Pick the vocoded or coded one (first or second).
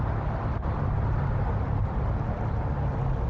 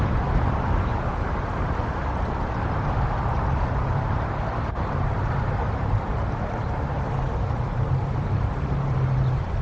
second